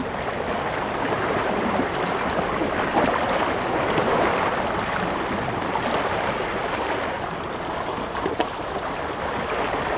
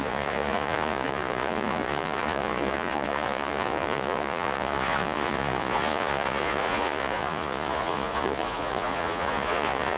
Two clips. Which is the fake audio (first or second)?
second